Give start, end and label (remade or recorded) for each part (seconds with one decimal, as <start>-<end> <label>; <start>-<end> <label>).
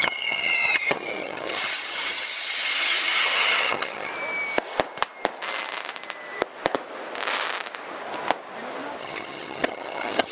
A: 0.0-4.1 remade; 4.1-9.0 recorded; 9.0-10.3 remade